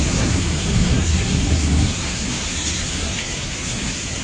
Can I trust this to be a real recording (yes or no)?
no